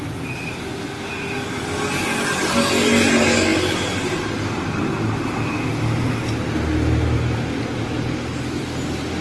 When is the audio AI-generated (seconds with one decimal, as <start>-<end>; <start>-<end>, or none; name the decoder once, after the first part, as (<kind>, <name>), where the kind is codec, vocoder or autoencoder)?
none